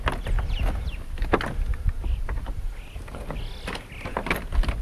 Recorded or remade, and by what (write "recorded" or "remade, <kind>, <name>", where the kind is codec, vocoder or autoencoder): recorded